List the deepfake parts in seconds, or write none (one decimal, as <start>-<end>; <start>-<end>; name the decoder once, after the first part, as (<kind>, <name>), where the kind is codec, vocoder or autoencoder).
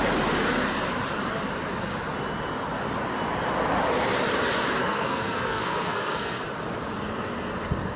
4.8-6.4 (codec, SNAC)